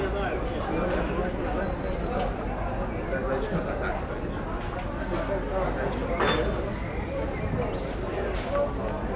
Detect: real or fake real